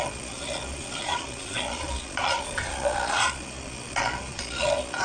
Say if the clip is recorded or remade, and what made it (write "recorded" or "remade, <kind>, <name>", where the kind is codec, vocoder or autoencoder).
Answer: remade, vocoder, Vocos